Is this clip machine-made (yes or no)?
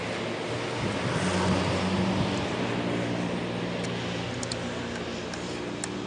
no